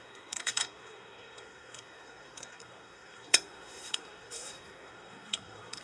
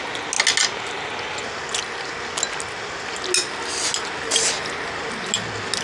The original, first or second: second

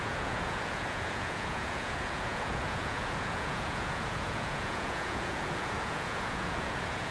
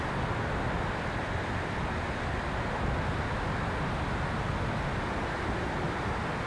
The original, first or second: second